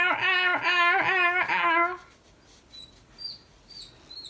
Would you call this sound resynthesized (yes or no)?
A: no